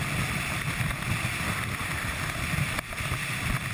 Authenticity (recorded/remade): recorded